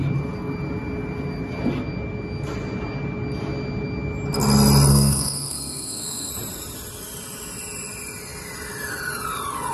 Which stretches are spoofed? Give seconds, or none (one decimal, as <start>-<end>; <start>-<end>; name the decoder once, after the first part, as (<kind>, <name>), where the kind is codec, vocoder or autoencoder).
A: 4.9-6.3 (codec, SNAC)